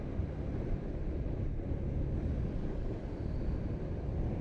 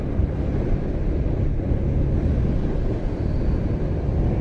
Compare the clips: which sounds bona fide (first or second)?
second